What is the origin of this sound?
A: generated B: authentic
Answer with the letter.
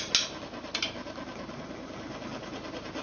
B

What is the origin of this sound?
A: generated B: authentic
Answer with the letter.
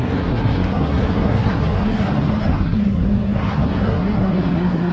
A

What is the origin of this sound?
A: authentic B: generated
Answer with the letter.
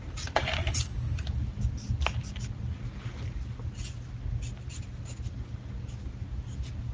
A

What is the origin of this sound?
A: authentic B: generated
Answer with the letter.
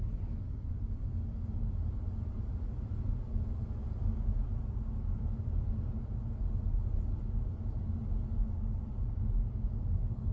A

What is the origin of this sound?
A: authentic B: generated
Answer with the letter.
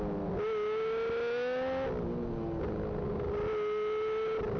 A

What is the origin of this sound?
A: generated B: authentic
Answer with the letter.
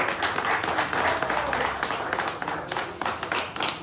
B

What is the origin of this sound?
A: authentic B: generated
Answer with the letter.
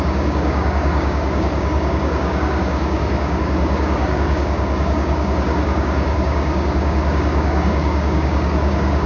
B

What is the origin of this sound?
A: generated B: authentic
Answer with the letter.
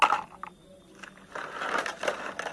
B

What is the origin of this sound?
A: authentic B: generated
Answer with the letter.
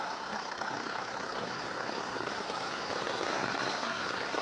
B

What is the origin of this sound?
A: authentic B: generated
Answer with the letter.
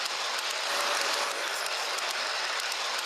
A